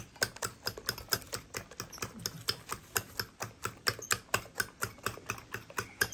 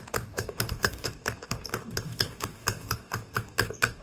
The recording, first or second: first